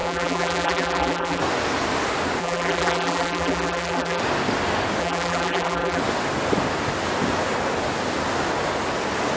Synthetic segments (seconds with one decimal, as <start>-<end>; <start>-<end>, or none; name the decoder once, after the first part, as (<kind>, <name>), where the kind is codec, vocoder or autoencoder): 0.0-1.4 (vocoder, BigVGAN v2); 2.4-4.2; 5.0-6.0